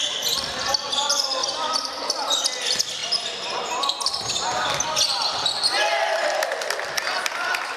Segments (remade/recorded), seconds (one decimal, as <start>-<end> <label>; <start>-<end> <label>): 0.0-1.4 recorded; 1.4-2.0 remade; 2.0-7.8 recorded